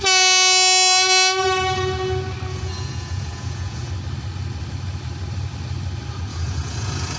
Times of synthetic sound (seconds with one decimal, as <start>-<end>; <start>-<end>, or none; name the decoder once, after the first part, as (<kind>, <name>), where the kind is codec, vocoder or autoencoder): 2.5-3.9 (vocoder, Vocos); 6.3-7.2